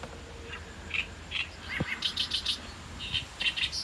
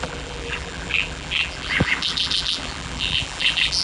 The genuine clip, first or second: first